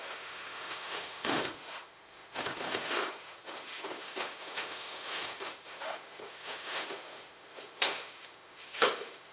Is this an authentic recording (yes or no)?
no